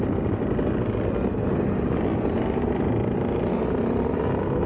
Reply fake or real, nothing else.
real